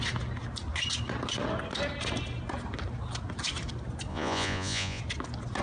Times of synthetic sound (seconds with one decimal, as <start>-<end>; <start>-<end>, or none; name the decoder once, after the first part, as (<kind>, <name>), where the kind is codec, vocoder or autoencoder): 4.1-5.0 (vocoder, Vocos)